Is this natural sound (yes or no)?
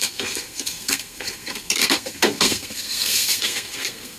no